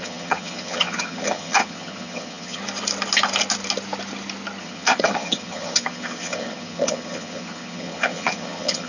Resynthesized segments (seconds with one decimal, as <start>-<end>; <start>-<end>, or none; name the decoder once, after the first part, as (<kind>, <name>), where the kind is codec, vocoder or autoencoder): 0.0-2.6 (vocoder, HiFi-GAN); 4.6-8.9